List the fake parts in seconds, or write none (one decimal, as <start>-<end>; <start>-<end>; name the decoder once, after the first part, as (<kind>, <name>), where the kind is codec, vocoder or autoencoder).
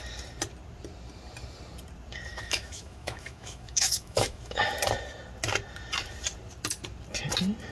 2.3-4.6 (autoencoder, DAC-VAE)